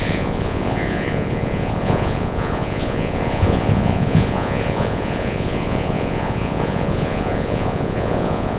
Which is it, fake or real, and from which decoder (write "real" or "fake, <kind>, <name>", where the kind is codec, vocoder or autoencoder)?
fake, vocoder, Vocos